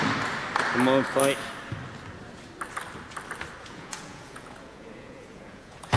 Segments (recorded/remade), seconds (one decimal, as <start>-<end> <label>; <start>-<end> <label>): 0.0-3.6 recorded; 3.6-6.0 remade